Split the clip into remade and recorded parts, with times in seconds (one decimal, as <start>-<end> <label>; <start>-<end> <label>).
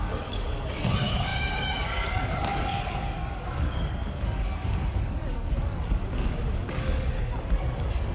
0.0-8.1 remade